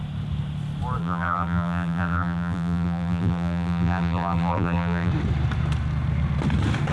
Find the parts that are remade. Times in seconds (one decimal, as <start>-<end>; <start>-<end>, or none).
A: 1.0-5.1

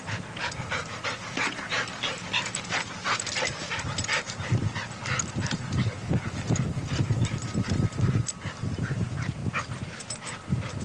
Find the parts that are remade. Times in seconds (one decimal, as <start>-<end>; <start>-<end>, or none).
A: 0.0-4.6; 6.9-9.4